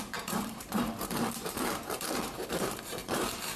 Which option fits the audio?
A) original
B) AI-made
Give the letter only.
B